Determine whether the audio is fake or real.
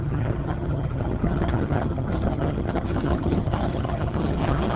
fake